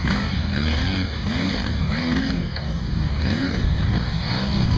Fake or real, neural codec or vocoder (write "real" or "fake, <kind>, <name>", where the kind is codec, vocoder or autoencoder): fake, codec, DAC